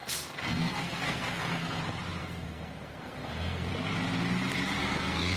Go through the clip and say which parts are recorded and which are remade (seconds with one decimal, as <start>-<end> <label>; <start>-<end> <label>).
0.0-1.8 remade; 1.8-2.2 recorded; 2.2-3.7 remade; 3.7-4.8 recorded; 4.8-5.4 remade